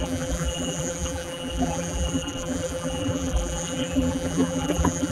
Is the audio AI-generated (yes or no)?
yes